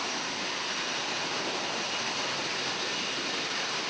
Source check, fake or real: real